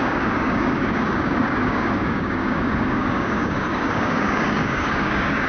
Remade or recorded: remade